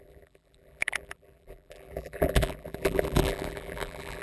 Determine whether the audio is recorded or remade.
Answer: remade